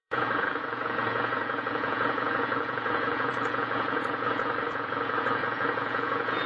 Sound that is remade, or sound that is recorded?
remade